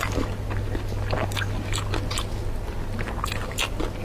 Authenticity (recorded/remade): recorded